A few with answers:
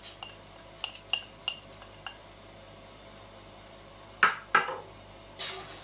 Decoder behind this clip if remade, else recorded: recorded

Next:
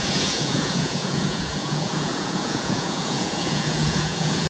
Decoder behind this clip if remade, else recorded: remade, vocoder, Vocos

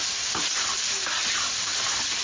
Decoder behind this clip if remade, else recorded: recorded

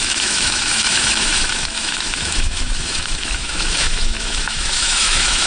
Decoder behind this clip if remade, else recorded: remade, autoencoder, DAC-VAE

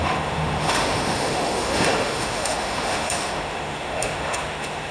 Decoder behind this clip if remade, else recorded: remade, autoencoder, DAC-VAE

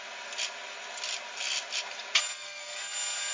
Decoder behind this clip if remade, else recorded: recorded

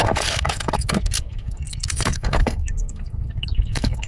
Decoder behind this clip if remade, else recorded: remade, codec, SNAC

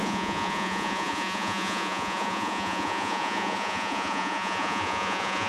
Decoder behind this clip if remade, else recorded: remade, vocoder, Vocos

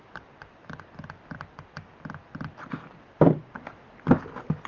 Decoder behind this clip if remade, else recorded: recorded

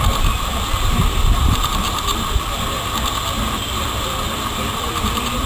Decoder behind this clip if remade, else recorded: remade, vocoder, BigVGAN v2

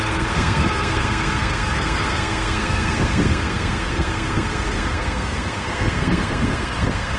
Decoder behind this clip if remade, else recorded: remade, codec, SNAC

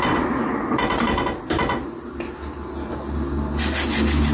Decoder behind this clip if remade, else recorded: recorded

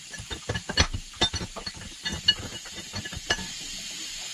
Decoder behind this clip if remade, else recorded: recorded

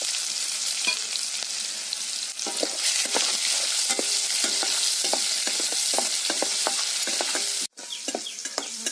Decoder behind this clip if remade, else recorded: recorded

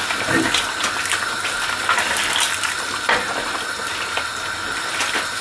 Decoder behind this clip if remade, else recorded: recorded